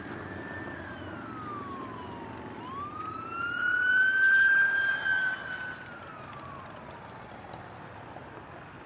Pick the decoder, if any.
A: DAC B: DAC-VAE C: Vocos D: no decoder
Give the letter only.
D